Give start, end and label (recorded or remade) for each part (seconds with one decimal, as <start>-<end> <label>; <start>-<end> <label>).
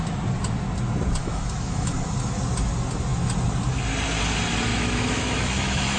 0.0-1.2 recorded; 1.2-1.9 remade; 1.9-4.7 recorded; 4.7-6.0 remade